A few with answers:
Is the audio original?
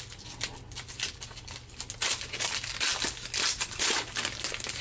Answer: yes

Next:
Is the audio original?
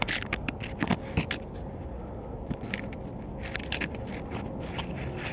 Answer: yes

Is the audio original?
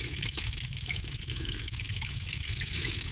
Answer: no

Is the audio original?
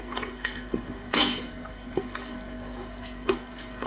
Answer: no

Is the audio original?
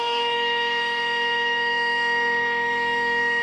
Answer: no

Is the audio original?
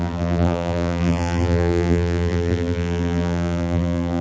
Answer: no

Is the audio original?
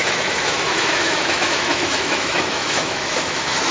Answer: no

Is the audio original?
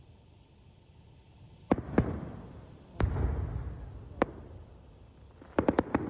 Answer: yes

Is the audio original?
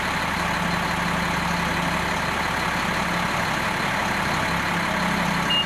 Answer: yes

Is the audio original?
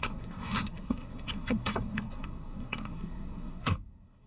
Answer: no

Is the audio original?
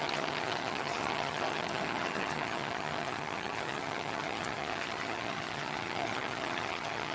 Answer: no